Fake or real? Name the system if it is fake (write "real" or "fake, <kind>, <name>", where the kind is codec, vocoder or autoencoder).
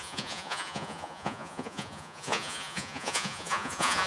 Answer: fake, vocoder, Vocos